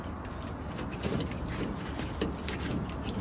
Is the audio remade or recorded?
recorded